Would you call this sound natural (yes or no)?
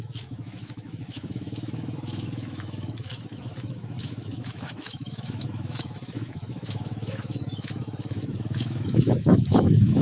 no